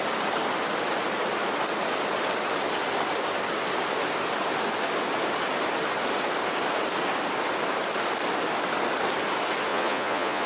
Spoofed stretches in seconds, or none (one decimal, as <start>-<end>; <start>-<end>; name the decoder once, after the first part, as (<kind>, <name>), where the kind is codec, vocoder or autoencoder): 9.7-10.5 (vocoder, Vocos)